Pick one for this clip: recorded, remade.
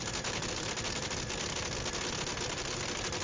recorded